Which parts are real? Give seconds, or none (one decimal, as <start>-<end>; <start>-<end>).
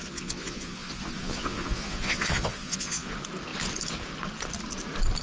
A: 3.1-5.2